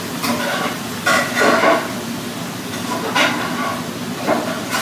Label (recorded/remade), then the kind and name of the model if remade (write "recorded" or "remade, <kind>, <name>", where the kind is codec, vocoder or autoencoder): recorded